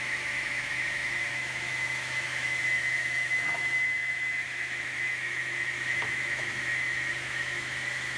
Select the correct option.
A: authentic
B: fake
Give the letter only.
B